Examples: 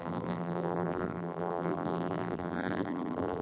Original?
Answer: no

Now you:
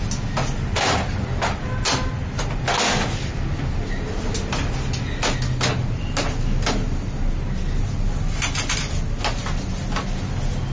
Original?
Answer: yes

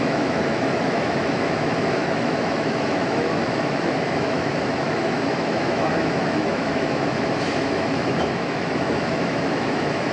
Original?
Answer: no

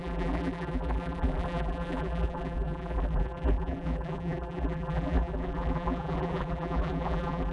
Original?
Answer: no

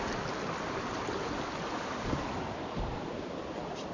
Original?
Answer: yes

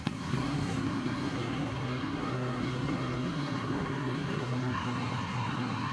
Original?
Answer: no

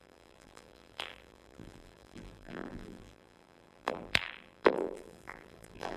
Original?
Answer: no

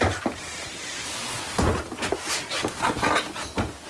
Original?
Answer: yes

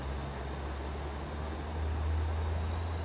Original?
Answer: yes